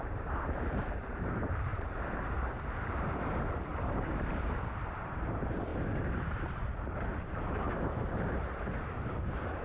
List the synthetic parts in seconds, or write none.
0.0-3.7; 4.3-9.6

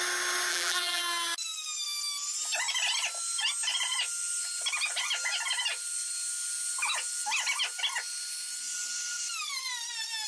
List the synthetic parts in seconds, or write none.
0.5-1.0

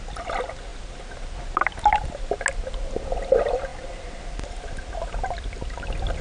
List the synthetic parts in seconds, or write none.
none

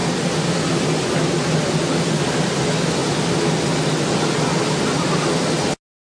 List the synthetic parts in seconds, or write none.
none

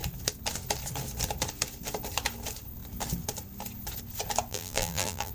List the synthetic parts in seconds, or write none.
4.5-5.3